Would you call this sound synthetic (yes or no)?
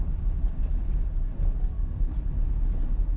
no